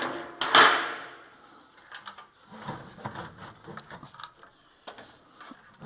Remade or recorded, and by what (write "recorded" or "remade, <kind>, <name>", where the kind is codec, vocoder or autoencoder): recorded